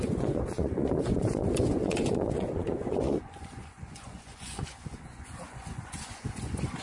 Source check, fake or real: fake